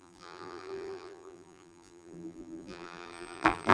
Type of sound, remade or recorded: remade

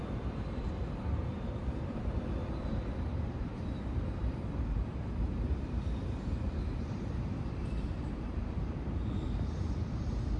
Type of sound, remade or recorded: remade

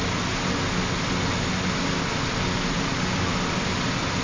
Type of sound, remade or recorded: recorded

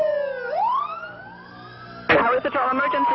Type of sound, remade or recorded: recorded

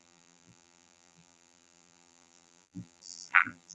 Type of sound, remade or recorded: remade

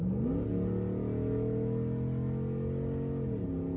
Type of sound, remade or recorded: recorded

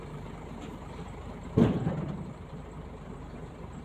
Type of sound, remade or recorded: remade